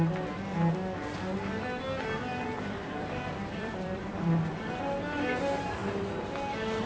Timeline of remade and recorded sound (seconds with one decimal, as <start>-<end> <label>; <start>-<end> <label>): 0.0-2.3 recorded; 2.3-4.6 remade; 4.6-6.9 recorded